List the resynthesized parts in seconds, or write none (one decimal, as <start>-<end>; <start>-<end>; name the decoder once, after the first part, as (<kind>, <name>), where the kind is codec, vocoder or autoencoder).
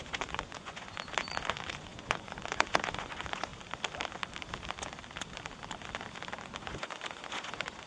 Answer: 0.0-3.5 (vocoder, Vocos); 6.6-7.9